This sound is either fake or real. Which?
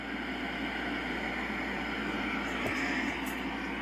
real